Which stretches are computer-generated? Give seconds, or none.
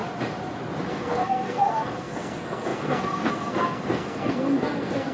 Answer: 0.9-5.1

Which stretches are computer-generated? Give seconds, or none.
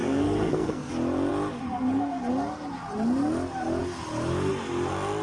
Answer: 0.0-0.9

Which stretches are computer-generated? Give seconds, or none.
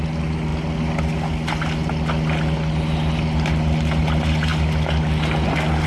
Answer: none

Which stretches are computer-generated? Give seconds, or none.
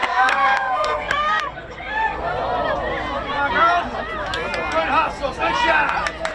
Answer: 0.0-2.3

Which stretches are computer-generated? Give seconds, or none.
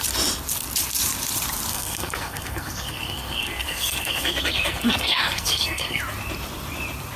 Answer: 1.7-6.0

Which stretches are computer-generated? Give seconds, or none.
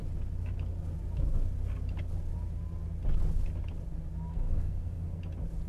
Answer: 4.3-5.2